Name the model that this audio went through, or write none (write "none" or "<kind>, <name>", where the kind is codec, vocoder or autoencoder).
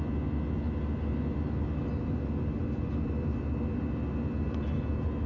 none